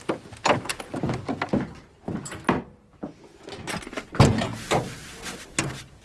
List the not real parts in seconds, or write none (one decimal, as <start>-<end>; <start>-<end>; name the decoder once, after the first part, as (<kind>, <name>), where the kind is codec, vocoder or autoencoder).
none